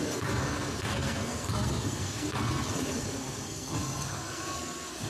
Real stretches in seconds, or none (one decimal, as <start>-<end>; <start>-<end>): none